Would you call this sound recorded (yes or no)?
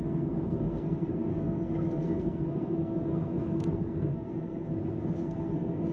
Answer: no